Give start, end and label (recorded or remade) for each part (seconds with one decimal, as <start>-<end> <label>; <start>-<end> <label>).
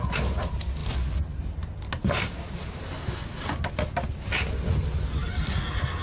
0.0-6.0 recorded